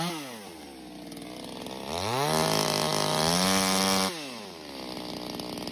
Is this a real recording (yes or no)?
yes